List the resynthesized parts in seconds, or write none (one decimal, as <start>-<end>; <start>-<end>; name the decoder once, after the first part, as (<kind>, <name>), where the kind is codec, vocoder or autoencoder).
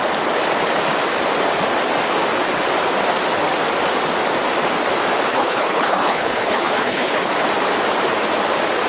5.3-7.3 (codec, HILCodec)